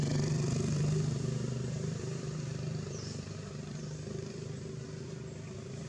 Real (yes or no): no